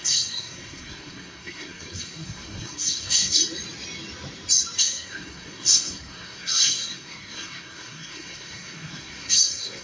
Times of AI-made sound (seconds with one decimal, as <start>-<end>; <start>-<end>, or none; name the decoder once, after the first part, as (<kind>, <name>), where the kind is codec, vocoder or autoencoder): 0.0-3.4 (codec, SNAC); 4.8-9.8